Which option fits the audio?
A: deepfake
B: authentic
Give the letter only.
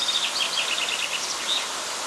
B